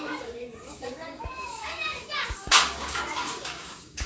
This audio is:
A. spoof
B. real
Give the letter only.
A